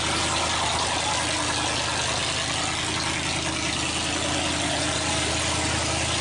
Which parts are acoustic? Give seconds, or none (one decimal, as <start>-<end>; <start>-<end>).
0.0-6.2